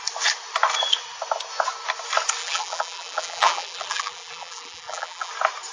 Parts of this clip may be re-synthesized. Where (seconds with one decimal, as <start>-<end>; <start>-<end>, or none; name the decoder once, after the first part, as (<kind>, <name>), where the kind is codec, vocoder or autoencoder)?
2.4-5.3 (vocoder, BigVGAN v2)